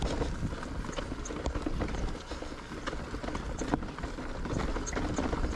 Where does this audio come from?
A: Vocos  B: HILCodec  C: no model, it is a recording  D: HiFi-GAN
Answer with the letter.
C